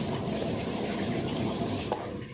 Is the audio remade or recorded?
remade